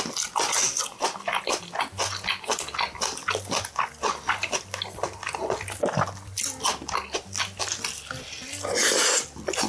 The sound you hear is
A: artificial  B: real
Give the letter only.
B